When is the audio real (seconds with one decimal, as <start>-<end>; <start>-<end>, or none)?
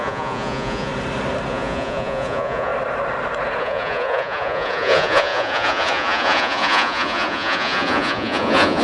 0.9-1.5; 2.7-3.6